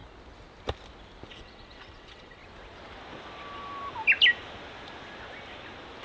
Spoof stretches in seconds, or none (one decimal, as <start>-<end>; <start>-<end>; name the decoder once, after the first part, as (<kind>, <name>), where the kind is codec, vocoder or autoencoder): 1.3-2.4 (vocoder, WaveNeXt)